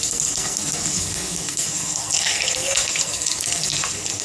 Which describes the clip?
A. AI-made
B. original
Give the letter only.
A